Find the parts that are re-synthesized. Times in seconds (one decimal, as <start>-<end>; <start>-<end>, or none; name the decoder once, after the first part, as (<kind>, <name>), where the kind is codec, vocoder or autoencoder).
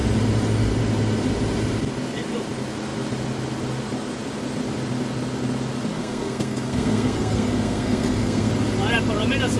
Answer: 5.9-8.5 (codec, SNAC)